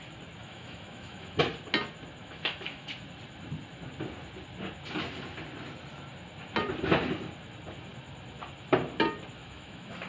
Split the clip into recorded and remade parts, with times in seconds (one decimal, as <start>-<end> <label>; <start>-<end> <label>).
0.0-0.4 recorded; 0.4-1.4 remade; 1.4-2.2 recorded; 2.2-2.9 remade; 2.9-9.4 recorded; 9.4-10.1 remade